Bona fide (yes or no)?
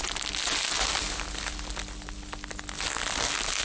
yes